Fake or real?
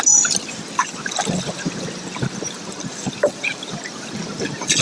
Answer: real